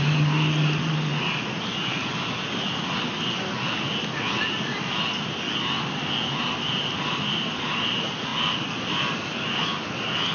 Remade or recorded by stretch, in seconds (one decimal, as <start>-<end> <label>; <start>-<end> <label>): 0.0-1.1 remade; 1.1-6.4 recorded; 6.4-10.3 remade